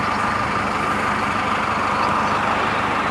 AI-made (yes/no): no